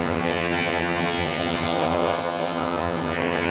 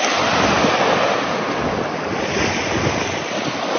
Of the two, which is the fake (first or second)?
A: first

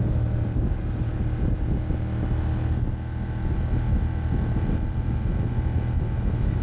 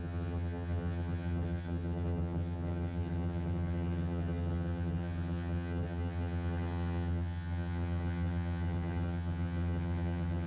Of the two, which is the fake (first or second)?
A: second